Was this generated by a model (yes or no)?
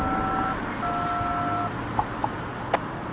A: no